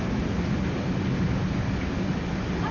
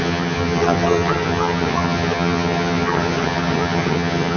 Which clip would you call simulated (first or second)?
second